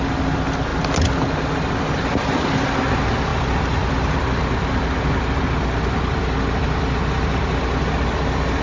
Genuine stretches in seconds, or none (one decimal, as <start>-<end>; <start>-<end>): 0.0-8.6